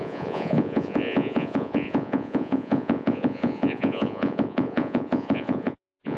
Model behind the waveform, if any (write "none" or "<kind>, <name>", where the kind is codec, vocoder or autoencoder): vocoder, Vocos